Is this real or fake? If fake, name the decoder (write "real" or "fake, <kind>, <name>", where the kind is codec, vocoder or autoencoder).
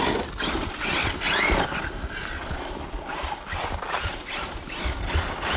real